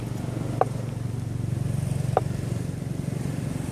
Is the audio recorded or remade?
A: recorded